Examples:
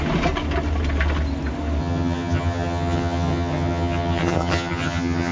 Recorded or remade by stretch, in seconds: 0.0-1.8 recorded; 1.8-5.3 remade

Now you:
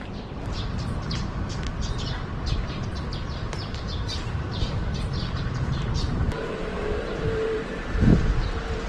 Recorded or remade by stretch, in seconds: 0.0-8.9 remade

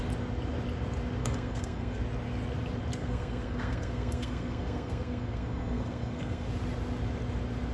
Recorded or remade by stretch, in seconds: 0.0-1.2 recorded; 1.2-2.0 remade; 2.0-3.0 recorded; 3.0-6.5 remade; 6.5-7.7 recorded

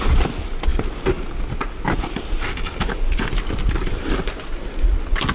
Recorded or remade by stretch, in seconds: 0.0-5.3 recorded

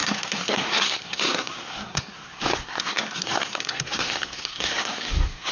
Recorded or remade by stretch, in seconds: 0.0-5.5 remade

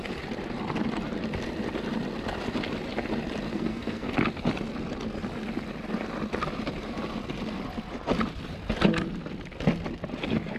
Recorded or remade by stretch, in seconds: 0.0-3.5 recorded; 3.5-4.1 remade; 4.1-10.6 recorded

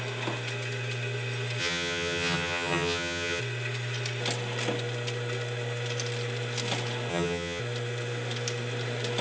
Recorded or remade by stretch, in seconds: 0.0-1.6 recorded; 1.6-3.4 remade; 3.4-7.1 recorded; 7.1-7.6 remade; 7.6-9.2 recorded